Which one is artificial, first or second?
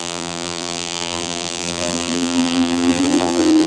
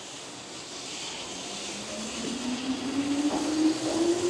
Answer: first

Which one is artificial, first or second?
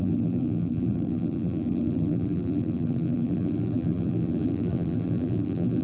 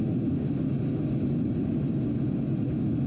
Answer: first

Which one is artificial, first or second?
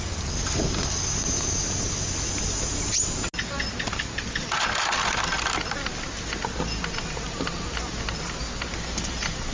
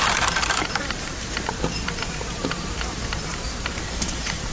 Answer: second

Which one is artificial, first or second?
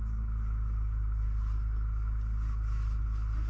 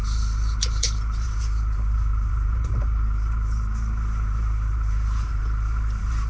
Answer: second